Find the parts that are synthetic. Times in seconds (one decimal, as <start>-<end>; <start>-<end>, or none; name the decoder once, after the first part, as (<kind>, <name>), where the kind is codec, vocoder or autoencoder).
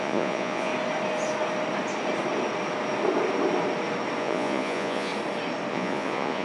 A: 0.0-0.7 (vocoder, Vocos); 4.2-5.1; 5.7-6.4